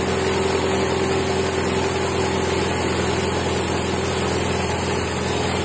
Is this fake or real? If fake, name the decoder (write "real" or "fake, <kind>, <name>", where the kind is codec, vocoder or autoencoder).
real